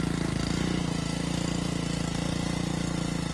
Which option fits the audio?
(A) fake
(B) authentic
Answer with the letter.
B